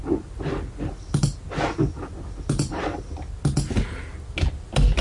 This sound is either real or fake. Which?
real